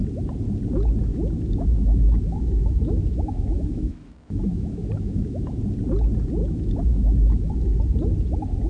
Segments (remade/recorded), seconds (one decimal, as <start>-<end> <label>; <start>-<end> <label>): 0.0-1.1 recorded; 1.1-5.6 remade; 5.6-6.4 recorded; 6.4-7.5 remade; 7.5-8.7 recorded